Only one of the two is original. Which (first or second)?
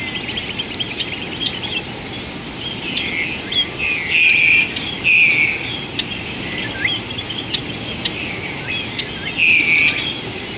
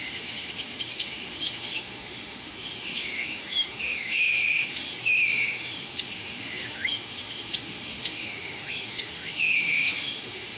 first